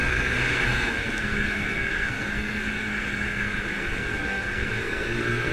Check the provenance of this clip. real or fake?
fake